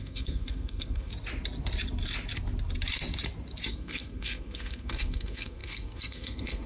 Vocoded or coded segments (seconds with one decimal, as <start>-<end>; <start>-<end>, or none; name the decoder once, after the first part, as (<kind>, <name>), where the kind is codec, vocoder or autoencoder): 0.0-1.1 (codec, SNAC); 3.7-6.7